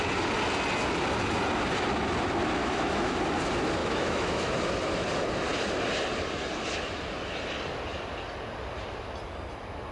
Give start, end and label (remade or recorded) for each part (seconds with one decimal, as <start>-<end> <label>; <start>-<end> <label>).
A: 0.0-2.6 recorded; 2.6-3.2 remade; 3.2-3.8 recorded; 3.8-4.5 remade; 4.5-9.9 recorded